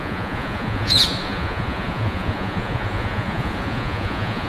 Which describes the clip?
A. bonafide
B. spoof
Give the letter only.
B